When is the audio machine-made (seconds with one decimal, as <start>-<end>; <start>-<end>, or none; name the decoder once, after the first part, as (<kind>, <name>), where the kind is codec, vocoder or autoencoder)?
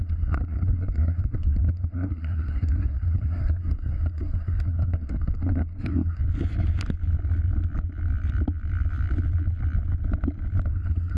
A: 0.0-6.2 (codec, SNAC); 10.7-11.2